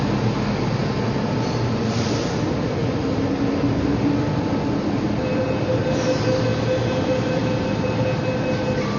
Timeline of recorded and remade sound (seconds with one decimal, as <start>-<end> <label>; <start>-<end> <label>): 0.0-9.0 recorded